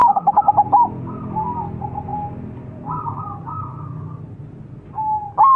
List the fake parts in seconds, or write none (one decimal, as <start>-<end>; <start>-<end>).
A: 0.0-0.5